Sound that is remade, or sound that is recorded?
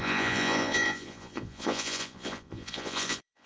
remade